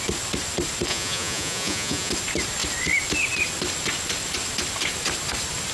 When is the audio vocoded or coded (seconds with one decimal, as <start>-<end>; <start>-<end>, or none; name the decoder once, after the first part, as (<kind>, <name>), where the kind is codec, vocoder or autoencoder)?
0.9-2.1 (vocoder, Vocos)